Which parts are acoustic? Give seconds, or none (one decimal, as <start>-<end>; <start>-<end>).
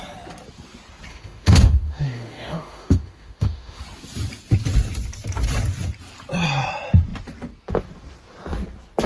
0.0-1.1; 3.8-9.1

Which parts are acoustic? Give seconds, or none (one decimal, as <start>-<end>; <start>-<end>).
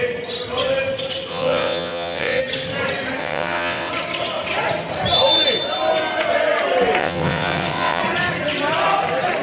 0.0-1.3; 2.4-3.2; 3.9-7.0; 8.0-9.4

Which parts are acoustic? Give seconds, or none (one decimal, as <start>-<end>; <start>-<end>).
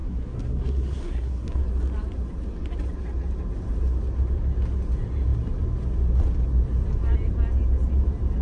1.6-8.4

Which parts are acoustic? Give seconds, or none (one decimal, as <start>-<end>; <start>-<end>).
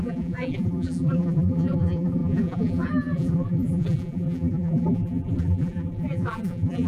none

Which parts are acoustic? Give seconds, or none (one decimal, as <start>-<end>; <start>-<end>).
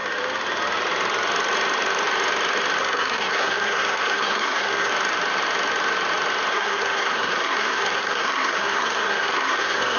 0.0-2.8; 4.9-6.5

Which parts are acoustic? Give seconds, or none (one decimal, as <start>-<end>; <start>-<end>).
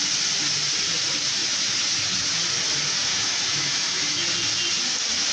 0.0-3.1; 4.2-5.3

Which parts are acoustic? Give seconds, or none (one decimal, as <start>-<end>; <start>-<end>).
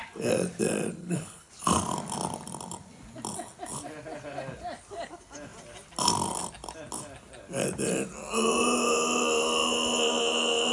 0.0-1.0; 1.5-10.7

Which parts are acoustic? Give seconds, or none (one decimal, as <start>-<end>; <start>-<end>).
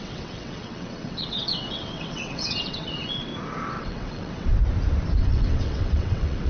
3.3-3.8; 4.5-5.2